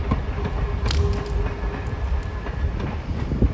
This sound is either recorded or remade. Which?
recorded